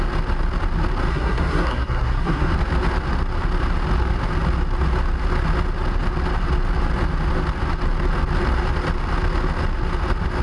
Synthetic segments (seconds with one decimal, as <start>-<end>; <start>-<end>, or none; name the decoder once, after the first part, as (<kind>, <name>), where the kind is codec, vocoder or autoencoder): 1.1-2.5 (codec, SNAC)